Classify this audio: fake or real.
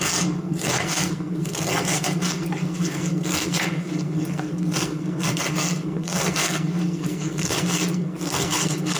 fake